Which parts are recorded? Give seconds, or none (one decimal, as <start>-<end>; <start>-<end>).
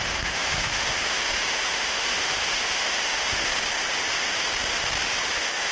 3.5-5.3